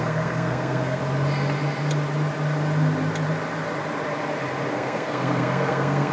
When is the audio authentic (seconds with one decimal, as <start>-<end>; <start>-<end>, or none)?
1.0-4.7